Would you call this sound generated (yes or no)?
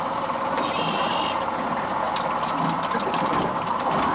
no